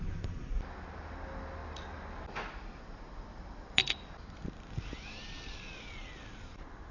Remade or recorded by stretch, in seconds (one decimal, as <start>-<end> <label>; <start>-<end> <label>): 0.0-6.9 recorded